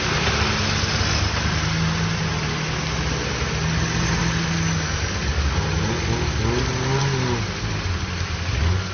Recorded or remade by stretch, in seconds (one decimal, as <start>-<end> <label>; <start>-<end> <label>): 0.0-8.9 recorded